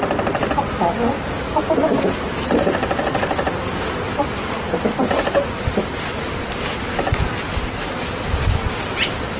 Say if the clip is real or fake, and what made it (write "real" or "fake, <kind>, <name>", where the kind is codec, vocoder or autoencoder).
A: real